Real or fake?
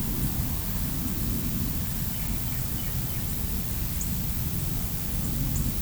real